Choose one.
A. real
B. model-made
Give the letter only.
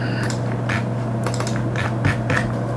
A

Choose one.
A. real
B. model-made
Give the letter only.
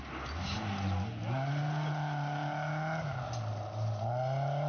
A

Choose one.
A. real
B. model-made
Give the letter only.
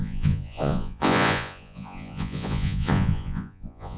B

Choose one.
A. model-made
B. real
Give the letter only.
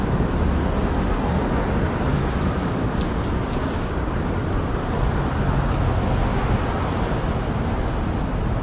B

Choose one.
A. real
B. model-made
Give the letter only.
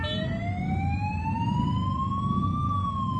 A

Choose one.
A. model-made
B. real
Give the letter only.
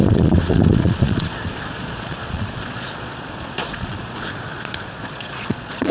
A